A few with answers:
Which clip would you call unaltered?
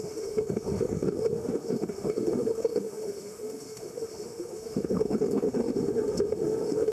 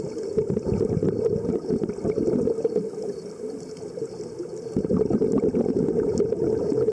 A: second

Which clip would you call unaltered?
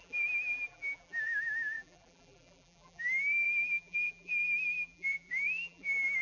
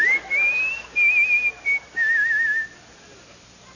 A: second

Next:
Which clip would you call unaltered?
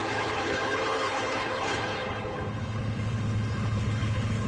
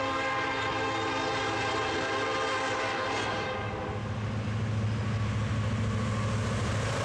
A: second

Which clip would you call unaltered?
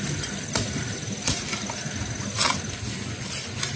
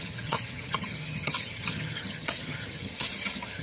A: first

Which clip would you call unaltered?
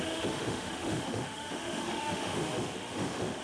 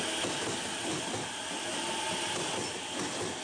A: second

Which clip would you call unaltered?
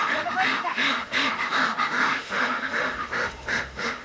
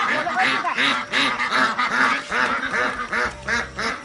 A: second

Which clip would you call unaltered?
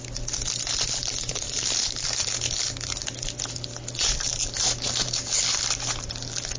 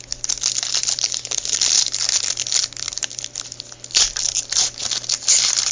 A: second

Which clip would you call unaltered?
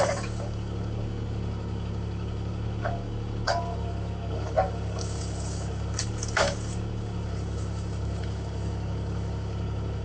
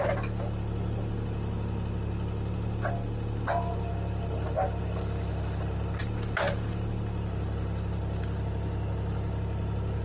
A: second